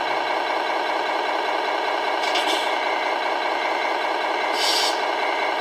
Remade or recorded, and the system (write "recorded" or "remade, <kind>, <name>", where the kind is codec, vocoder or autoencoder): recorded